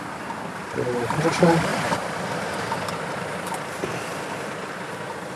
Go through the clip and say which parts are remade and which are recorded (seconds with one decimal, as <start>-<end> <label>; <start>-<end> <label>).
0.0-1.7 recorded; 1.7-4.9 remade; 4.9-5.4 recorded

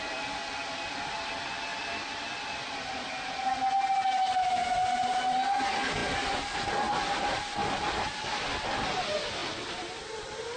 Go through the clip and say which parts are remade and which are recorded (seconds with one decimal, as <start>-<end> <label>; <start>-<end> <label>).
0.0-1.7 recorded; 1.7-3.2 remade; 3.2-6.0 recorded; 6.0-6.9 remade; 6.9-9.4 recorded; 9.4-10.2 remade; 10.2-10.6 recorded

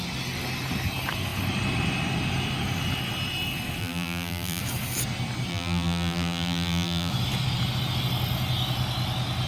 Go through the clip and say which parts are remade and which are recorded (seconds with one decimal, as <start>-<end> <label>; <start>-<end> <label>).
0.0-3.8 recorded; 3.8-4.6 remade; 4.6-5.5 recorded; 5.5-7.1 remade; 7.1-9.5 recorded

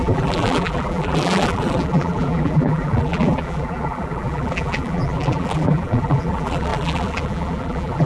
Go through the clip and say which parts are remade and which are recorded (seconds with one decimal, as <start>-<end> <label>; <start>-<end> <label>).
0.0-8.0 remade

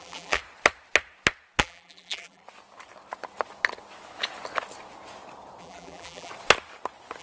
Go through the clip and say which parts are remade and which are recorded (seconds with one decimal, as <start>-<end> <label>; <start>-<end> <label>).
0.0-0.4 remade; 0.4-1.6 recorded; 1.6-2.4 remade; 2.4-5.6 recorded; 5.6-6.3 remade; 6.3-7.2 recorded